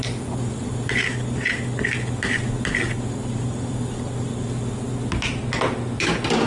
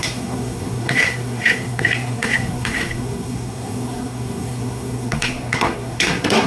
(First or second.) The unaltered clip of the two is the first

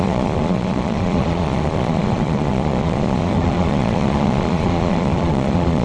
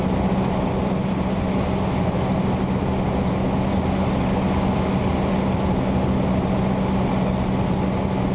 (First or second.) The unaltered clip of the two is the second